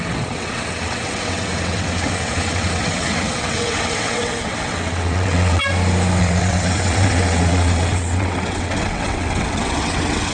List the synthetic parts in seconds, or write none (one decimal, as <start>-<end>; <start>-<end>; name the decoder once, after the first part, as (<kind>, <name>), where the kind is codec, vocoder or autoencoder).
0.0-5.6 (vocoder, WaveNeXt); 6.2-10.3